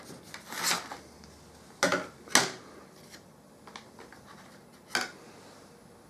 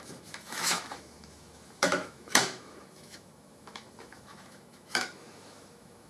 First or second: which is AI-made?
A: second